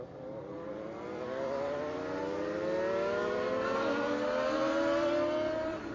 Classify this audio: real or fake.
real